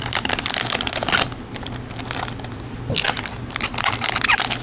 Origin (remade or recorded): recorded